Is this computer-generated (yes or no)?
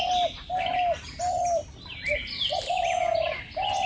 no